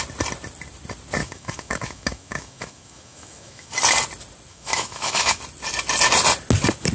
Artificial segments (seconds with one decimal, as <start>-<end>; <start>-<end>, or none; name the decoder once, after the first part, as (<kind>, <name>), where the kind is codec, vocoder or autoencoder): 1.2-3.7 (autoencoder, DAC-VAE); 4.5-5.4